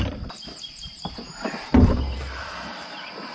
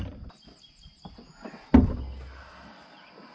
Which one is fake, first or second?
first